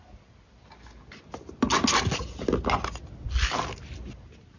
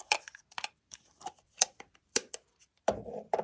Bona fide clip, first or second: first